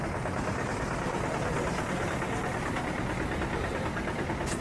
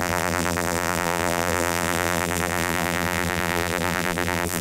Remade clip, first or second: second